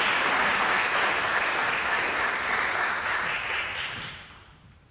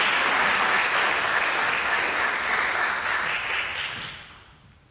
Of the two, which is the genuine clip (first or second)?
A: second